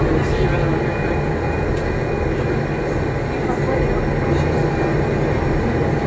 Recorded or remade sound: recorded